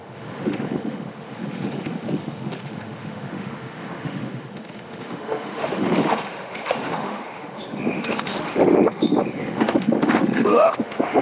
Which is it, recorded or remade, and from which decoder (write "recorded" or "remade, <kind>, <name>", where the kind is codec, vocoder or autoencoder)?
remade, autoencoder, DAC-VAE